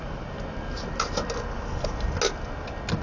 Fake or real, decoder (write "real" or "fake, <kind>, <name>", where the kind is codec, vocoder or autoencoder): real